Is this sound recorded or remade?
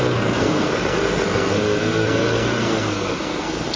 remade